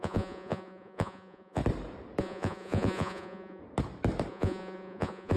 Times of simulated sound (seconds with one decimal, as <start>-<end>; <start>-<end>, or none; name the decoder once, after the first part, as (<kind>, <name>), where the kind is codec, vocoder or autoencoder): 0.0-1.6 (vocoder, Vocos); 2.2-3.6; 4.3-5.4